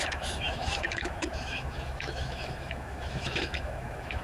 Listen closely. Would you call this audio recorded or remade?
remade